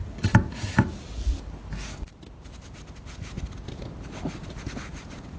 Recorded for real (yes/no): yes